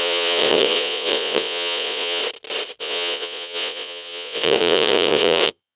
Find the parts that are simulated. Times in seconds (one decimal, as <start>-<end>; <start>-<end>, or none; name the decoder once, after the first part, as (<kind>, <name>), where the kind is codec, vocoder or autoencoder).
0.0-2.2 (vocoder, Vocos); 2.8-5.8